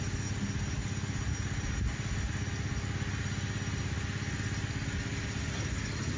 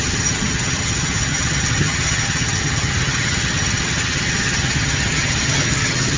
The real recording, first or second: first